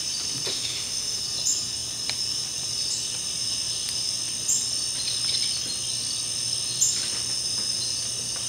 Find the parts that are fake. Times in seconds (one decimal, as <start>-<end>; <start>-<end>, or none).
0.5-1.2